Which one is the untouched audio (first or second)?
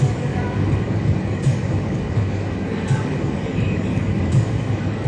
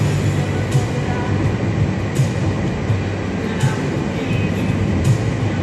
second